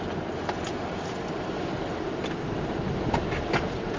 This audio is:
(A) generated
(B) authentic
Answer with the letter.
B